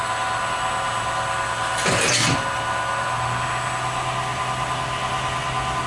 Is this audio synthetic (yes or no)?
no